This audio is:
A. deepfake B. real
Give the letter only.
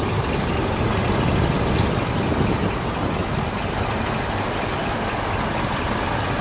B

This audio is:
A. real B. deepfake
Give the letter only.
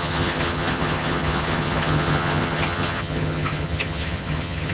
B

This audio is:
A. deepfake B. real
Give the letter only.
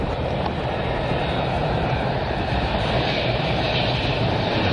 A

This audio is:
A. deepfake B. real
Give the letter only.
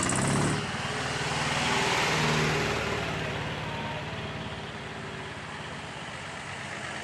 B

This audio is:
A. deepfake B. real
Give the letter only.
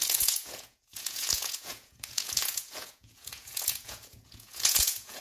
A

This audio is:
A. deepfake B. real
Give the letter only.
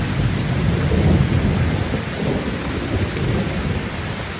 B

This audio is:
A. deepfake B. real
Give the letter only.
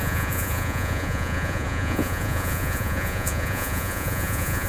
A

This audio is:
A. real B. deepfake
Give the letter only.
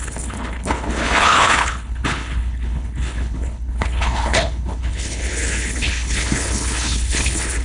B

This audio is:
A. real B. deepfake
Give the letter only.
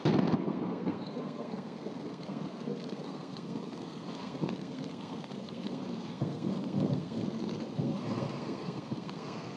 B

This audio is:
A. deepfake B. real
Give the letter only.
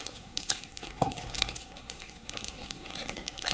A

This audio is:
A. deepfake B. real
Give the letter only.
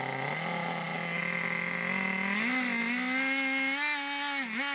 B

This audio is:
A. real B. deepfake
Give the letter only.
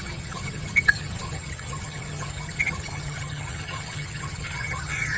B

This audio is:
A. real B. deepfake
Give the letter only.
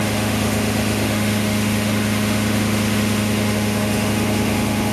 B